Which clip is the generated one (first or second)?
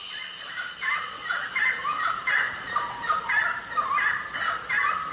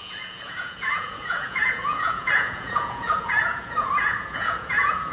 second